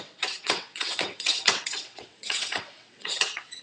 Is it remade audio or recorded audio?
remade